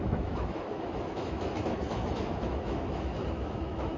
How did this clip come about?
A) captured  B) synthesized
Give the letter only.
B